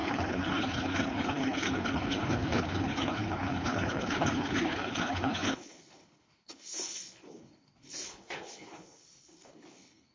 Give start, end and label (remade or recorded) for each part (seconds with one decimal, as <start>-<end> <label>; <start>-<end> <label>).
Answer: 0.0-10.1 remade